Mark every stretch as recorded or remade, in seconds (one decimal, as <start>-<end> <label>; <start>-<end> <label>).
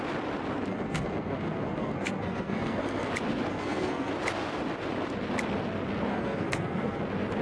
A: 0.0-0.7 recorded; 0.7-3.1 remade; 3.1-3.5 recorded; 3.5-4.1 remade; 4.1-6.1 recorded; 6.1-7.0 remade; 7.0-7.4 recorded